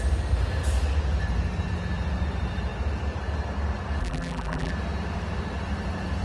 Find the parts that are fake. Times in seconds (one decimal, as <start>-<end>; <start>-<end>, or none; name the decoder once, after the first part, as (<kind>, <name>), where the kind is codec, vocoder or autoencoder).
4.0-4.7 (vocoder, BigVGAN v2)